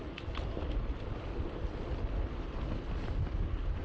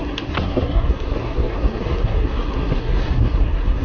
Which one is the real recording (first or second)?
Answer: first